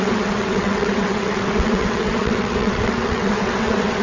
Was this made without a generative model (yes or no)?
no